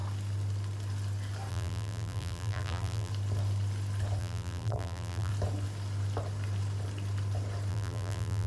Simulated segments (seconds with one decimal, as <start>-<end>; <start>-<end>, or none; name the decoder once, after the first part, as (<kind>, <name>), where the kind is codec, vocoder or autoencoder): 1.5-3.1 (vocoder, BigVGAN v2); 4.2-5.3; 7.7-8.5